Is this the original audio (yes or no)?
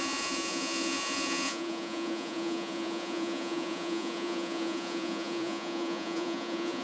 no